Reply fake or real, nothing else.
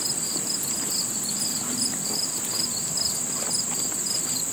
real